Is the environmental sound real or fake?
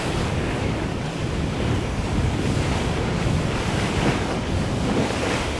fake